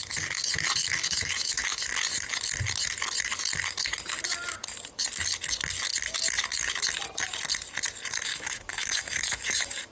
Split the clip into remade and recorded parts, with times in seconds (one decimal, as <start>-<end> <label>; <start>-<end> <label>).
0.0-0.8 recorded; 0.8-1.9 remade; 1.9-8.3 recorded; 8.3-9.9 remade